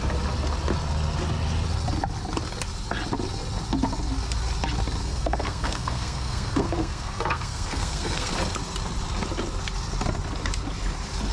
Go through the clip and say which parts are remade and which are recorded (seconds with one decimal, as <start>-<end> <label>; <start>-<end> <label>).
0.0-5.0 recorded; 5.0-8.3 remade; 8.3-11.3 recorded